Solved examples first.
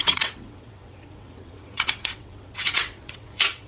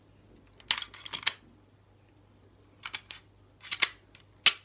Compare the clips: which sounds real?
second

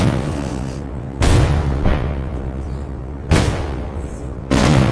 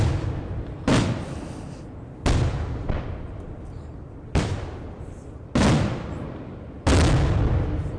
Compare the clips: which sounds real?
second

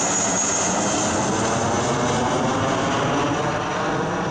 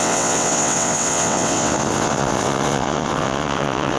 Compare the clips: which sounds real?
first